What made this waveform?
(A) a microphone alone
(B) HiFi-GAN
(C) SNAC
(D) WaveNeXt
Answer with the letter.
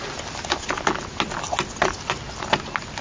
A